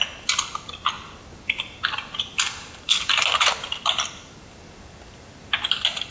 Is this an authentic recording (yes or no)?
yes